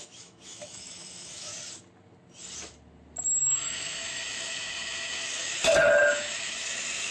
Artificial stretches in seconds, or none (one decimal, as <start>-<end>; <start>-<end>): 0.0-1.5; 3.4-5.6; 6.2-7.1

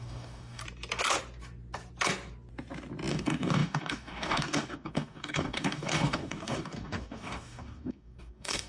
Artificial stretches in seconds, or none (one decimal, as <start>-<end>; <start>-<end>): 0.0-0.6; 3.1-8.7